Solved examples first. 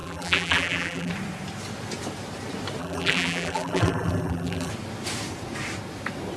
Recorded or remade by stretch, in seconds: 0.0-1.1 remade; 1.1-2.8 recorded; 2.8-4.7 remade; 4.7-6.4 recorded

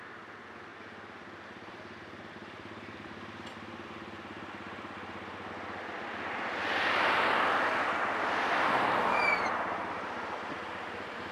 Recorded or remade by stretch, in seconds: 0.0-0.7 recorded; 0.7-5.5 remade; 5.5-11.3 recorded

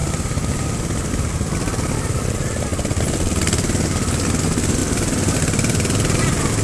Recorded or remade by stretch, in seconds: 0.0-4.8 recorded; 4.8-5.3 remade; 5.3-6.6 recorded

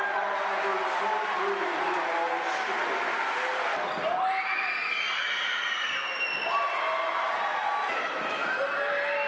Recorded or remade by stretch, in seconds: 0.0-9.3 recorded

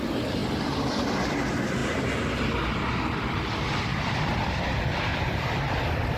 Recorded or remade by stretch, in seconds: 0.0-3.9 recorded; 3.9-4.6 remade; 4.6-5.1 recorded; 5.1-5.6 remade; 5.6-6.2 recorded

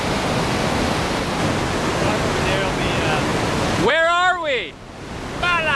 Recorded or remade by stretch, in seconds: 0.0-5.7 recorded

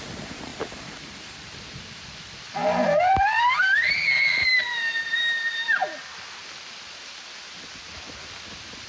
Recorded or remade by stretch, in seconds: 0.0-5.8 remade; 5.8-8.5 recorded; 8.5-8.9 remade